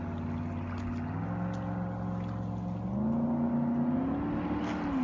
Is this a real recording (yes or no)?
yes